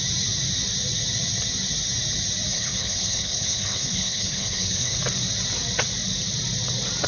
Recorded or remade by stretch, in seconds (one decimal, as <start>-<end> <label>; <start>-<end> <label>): 0.0-2.5 recorded; 2.5-5.0 remade; 5.0-7.1 recorded